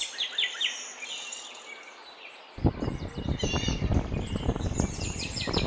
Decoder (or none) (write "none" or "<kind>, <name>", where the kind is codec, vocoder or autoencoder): none